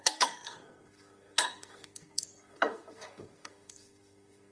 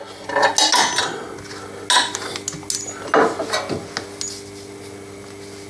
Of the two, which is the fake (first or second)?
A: first